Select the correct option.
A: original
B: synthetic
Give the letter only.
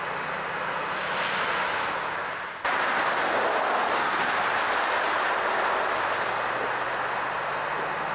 A